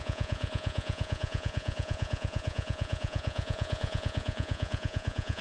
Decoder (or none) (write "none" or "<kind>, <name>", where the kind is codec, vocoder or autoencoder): vocoder, Vocos